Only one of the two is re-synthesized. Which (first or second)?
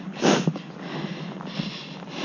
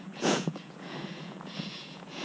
second